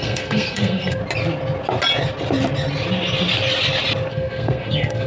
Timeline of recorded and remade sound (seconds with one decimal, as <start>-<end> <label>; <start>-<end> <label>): 0.0-1.0 remade; 1.0-4.1 recorded; 4.1-5.1 remade